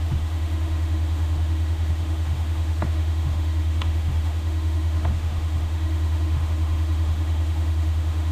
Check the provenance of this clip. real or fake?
fake